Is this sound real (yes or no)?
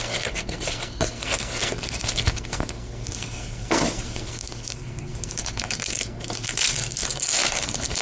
no